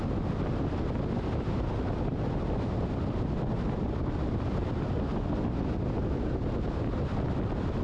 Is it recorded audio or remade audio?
recorded